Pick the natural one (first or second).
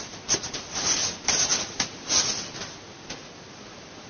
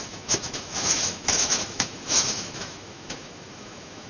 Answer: first